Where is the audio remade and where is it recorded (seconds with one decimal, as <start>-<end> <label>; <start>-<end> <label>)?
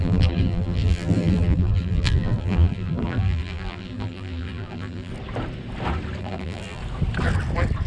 0.0-5.1 remade; 5.1-6.2 recorded; 6.2-6.8 remade; 6.8-7.9 recorded